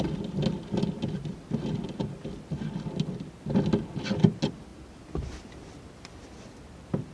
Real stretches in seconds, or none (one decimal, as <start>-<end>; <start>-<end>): 0.0-7.1